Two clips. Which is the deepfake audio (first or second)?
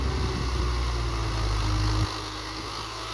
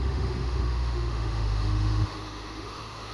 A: second